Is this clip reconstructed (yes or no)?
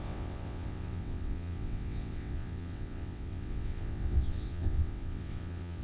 yes